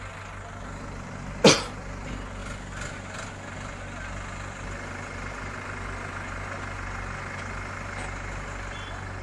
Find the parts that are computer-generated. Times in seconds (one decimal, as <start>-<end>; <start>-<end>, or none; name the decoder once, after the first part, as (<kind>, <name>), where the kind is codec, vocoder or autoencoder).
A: none